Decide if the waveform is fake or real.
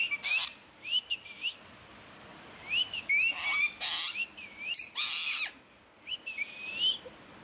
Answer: fake